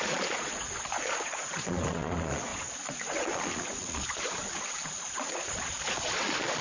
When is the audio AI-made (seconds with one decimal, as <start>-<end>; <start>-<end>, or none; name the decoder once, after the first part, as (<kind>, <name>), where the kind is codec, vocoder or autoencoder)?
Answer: 0.0-6.6 (vocoder, Vocos)